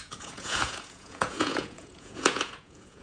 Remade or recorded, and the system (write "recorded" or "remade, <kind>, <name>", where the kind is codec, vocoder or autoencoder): remade, vocoder, Vocos